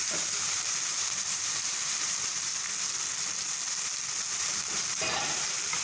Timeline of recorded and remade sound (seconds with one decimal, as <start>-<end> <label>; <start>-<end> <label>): 0.0-2.5 remade; 2.5-4.4 recorded; 4.4-5.8 remade